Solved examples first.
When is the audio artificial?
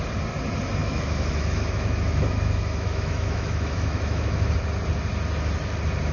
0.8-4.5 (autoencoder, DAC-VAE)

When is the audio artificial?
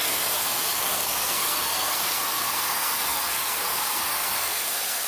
0.0-5.1 (codec, SNAC)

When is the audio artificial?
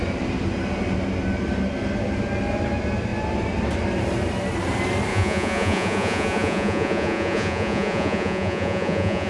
5.1-9.3 (vocoder, Vocos)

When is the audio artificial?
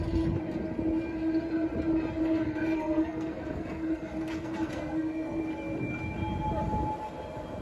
2.2-5.4 (codec, SNAC)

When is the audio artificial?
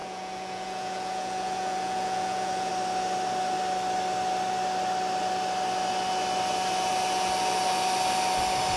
0.0-2.7 (vocoder, Vocos)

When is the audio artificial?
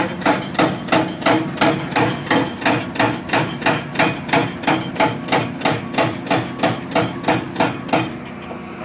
none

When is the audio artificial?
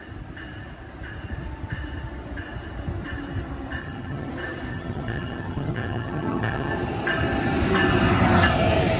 3.8-4.3 (vocoder, HiFi-GAN); 4.7-6.7